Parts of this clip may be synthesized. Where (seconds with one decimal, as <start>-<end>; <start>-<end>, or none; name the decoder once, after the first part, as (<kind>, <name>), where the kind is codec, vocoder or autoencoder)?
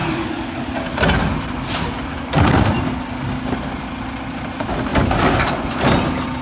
none